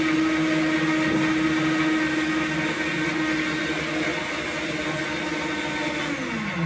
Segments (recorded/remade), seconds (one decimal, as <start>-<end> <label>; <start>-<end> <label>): 0.0-6.7 recorded